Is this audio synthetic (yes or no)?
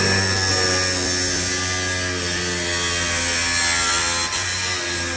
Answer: no